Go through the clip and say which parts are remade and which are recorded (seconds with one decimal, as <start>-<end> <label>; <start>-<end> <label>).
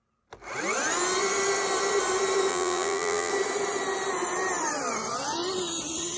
0.0-2.5 recorded; 2.5-3.3 remade; 3.3-6.2 recorded